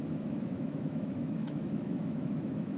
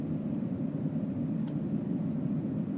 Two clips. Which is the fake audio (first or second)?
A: first